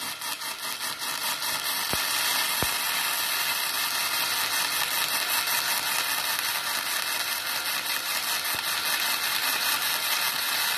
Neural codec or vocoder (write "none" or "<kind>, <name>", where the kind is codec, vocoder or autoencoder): none